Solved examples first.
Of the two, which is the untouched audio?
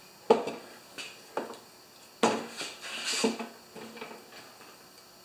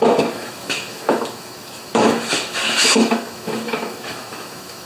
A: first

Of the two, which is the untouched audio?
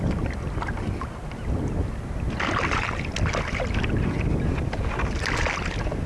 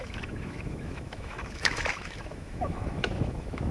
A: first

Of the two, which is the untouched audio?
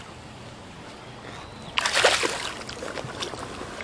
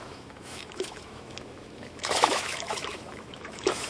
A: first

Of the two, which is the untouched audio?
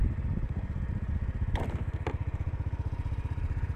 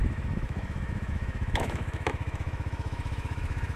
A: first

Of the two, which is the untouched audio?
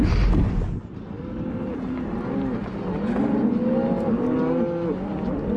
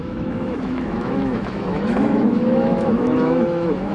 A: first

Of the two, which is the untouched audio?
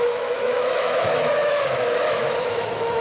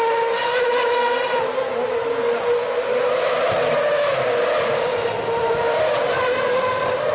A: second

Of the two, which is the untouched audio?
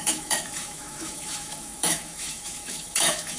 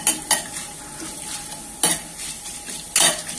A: second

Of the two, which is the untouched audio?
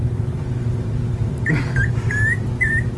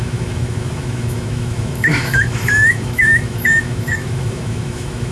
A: first